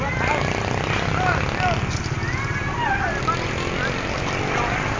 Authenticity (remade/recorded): recorded